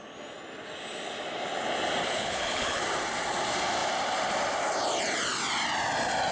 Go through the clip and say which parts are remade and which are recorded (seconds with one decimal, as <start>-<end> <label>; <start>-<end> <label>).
0.0-2.0 recorded; 2.0-2.8 remade; 2.8-6.3 recorded